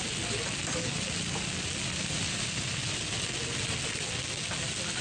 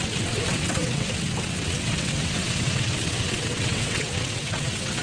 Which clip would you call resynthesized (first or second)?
second